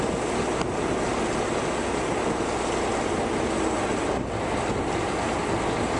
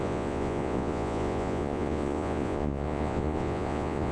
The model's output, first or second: second